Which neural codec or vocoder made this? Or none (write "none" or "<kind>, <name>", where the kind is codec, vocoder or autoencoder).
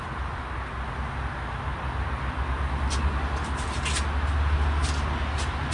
none